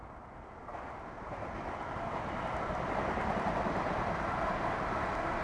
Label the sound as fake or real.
real